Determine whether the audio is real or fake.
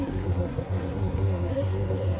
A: fake